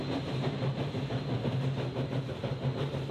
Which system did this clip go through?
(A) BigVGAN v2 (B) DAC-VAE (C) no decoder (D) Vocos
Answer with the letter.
C